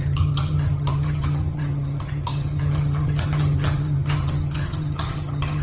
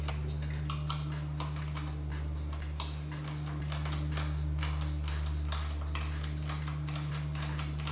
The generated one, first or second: first